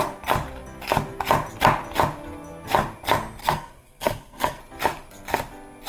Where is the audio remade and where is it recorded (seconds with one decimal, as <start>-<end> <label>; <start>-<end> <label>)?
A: 0.0-3.4 recorded; 3.4-4.6 remade; 4.6-5.9 recorded